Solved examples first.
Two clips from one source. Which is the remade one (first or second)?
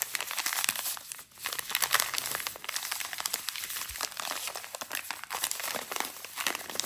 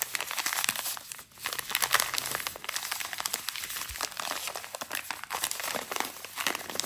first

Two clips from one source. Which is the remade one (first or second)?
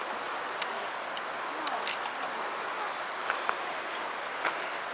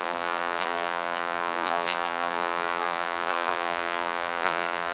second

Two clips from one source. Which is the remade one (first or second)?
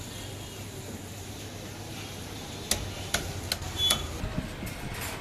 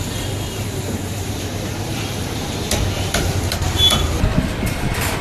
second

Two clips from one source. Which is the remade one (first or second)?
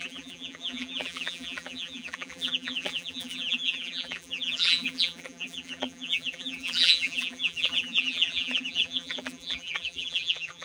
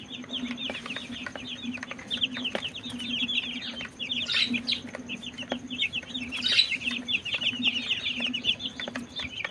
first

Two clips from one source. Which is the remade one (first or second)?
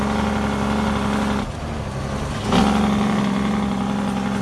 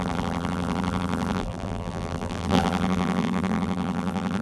second